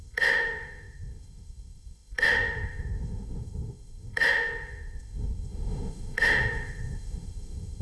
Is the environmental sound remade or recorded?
remade